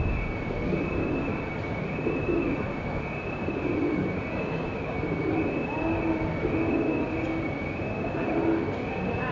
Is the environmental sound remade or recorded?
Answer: recorded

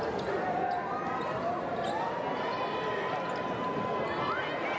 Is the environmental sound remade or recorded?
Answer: recorded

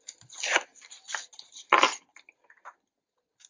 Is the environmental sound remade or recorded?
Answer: recorded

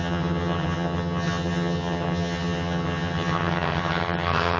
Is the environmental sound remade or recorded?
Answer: remade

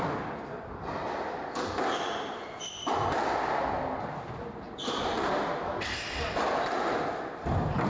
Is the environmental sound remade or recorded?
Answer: recorded